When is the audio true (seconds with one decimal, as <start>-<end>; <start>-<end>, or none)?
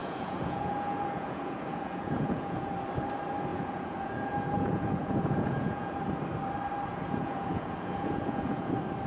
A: 2.7-3.5; 6.0-6.9; 8.7-9.1